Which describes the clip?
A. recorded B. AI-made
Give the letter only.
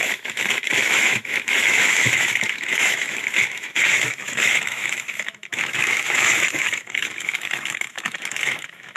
B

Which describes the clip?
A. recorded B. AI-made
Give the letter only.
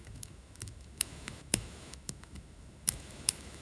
B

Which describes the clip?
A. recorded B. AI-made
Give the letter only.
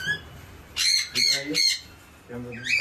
A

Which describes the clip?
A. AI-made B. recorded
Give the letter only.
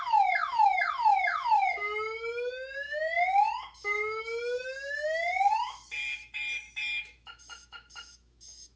A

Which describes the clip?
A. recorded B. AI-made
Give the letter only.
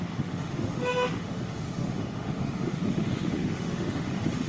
B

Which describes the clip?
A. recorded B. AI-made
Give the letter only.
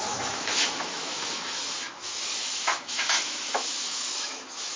B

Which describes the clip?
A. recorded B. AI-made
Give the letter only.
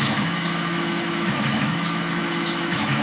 B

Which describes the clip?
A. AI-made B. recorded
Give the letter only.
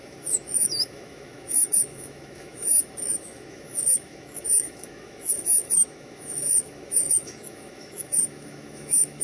A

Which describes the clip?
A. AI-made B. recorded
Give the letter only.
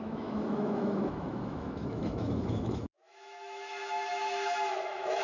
A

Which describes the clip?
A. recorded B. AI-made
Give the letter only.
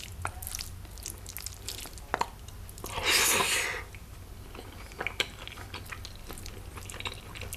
A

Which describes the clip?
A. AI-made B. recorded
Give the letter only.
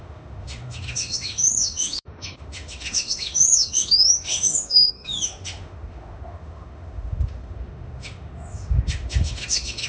A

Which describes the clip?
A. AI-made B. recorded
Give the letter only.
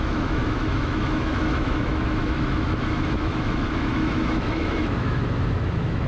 A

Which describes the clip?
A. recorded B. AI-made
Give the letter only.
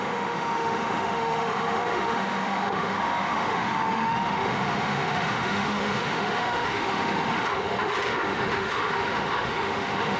B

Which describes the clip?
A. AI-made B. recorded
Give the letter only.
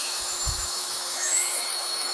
A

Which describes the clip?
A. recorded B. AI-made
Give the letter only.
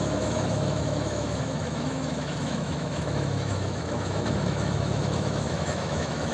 B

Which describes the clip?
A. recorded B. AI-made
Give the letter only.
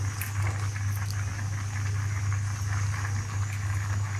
A